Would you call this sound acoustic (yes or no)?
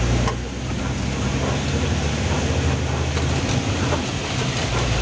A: yes